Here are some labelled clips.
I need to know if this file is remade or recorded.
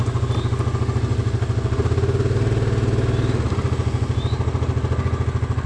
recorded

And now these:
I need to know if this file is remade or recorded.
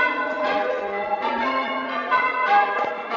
remade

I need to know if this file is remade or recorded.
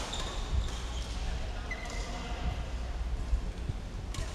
recorded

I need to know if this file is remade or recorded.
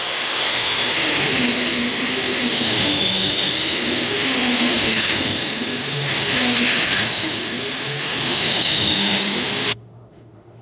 remade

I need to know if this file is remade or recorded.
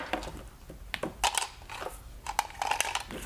recorded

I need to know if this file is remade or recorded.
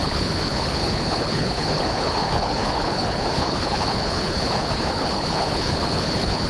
remade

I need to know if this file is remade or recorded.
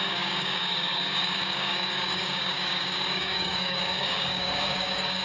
remade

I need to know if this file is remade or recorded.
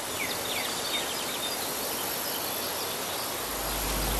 recorded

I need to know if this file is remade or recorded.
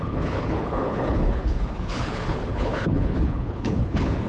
remade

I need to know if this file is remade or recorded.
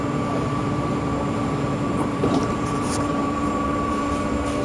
remade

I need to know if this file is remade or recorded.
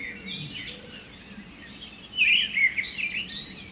recorded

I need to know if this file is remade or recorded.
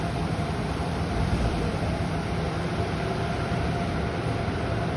remade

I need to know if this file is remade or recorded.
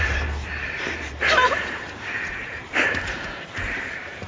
remade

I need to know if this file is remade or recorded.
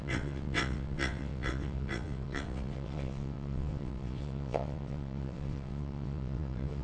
remade